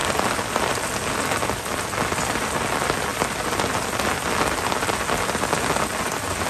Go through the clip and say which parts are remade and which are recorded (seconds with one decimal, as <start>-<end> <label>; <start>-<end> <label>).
0.0-6.5 recorded